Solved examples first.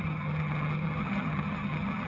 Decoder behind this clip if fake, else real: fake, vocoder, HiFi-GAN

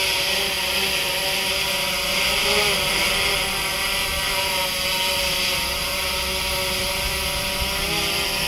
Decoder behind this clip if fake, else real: real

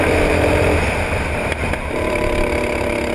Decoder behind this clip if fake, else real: fake, vocoder, BigVGAN v2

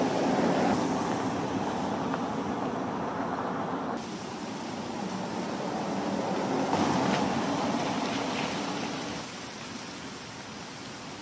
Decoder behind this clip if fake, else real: real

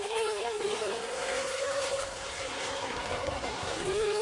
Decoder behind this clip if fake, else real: fake, codec, SNAC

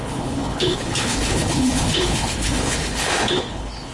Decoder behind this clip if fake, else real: fake, codec, HILCodec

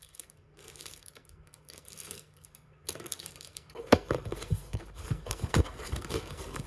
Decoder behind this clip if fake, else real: fake, codec, SNAC